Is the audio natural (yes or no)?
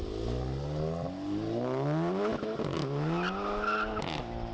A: yes